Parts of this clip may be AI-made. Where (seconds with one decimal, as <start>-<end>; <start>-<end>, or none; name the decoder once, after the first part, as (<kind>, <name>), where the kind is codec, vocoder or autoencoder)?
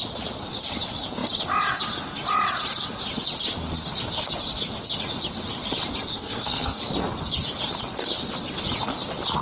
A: 6.1-6.8 (codec, SNAC)